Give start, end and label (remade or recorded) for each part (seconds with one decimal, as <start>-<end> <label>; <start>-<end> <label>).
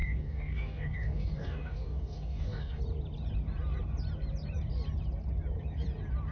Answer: 0.0-2.8 remade; 2.8-6.3 recorded